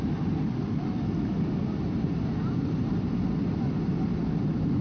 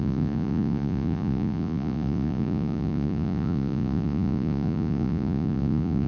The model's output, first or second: second